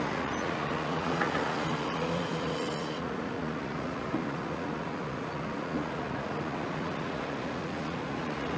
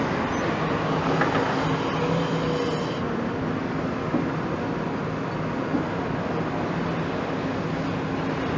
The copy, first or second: first